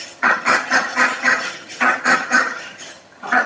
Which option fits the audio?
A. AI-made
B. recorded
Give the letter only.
A